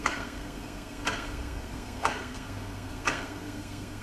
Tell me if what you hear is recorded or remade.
remade